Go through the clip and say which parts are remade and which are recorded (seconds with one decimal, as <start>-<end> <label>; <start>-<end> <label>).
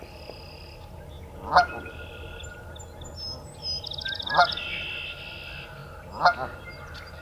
0.0-7.2 recorded